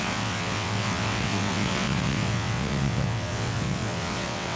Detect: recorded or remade remade